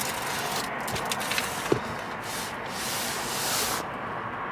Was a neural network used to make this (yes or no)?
no